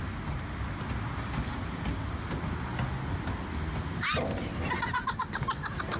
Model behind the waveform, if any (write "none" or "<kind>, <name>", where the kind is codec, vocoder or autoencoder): none